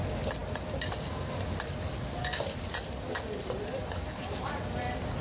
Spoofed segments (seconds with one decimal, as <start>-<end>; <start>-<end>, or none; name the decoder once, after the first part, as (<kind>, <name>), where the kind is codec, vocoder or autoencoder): none